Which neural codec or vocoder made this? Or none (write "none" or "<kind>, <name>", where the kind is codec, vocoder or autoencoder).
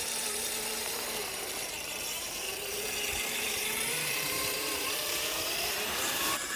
vocoder, BigVGAN v2